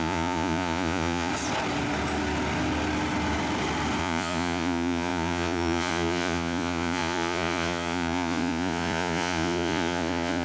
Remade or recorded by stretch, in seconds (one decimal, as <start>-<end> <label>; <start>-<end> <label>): 0.0-1.3 remade; 1.3-4.0 recorded; 4.0-10.4 remade

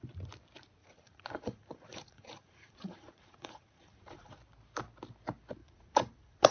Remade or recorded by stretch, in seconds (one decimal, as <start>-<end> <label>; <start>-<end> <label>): 0.0-0.8 recorded; 0.8-4.4 remade; 4.4-5.6 recorded; 5.6-6.5 remade

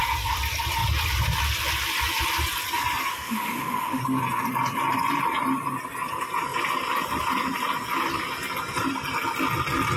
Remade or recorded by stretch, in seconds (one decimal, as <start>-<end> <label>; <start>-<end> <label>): 0.0-3.1 recorded; 3.1-4.0 remade; 4.0-10.0 recorded

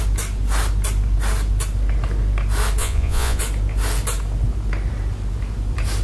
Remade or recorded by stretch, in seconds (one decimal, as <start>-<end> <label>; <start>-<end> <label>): 0.0-2.8 recorded; 2.8-3.4 remade; 3.4-6.0 recorded

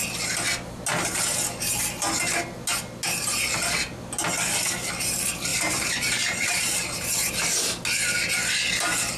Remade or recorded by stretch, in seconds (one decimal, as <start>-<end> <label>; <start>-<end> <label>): 0.0-5.5 recorded; 5.5-7.3 remade; 7.3-9.2 recorded